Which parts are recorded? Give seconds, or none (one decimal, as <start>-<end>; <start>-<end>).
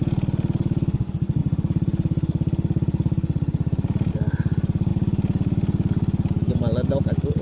0.0-1.4; 4.1-7.4